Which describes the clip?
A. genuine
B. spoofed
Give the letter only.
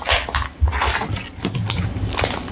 A